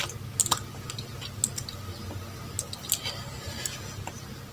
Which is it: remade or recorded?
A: recorded